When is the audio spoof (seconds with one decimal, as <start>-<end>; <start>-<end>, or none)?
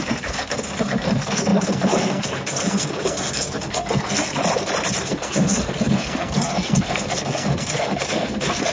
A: 0.0-4.4; 5.0-8.7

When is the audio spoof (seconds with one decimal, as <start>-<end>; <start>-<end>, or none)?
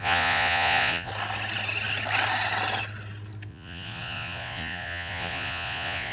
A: 0.0-1.1; 3.5-6.1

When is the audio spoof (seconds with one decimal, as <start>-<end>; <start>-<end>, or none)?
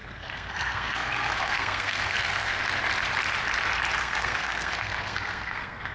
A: 0.0-2.6; 4.0-5.9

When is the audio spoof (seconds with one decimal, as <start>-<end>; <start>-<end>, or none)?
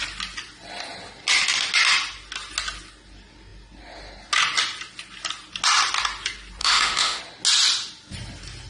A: 6.6-7.2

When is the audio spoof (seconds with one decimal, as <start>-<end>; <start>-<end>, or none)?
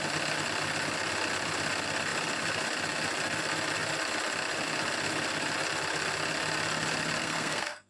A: 7.2-7.9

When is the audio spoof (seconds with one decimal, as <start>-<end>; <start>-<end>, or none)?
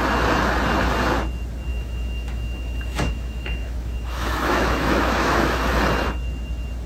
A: 1.7-5.8